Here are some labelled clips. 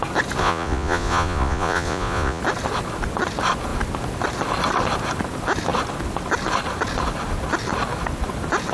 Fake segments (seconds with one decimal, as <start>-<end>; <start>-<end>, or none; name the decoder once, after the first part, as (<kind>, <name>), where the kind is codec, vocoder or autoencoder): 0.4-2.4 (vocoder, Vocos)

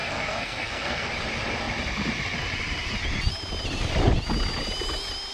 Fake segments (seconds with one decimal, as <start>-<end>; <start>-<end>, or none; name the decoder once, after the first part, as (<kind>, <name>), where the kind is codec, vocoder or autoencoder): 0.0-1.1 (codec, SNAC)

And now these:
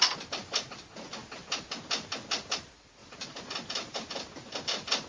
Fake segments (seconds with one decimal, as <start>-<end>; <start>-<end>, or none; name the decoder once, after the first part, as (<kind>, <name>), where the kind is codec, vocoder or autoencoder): none